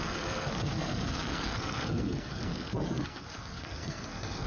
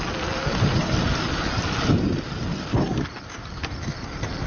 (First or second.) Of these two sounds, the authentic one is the second